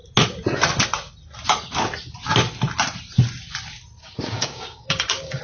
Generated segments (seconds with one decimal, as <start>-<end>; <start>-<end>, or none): 4.0-5.4